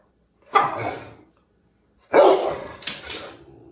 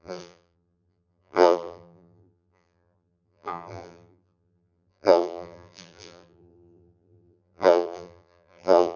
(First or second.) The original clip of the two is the first